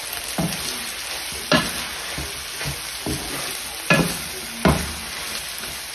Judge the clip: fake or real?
real